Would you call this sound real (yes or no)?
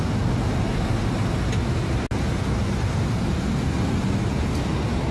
yes